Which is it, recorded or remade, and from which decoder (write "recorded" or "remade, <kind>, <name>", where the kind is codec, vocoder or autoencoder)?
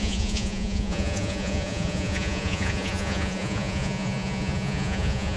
remade, vocoder, Vocos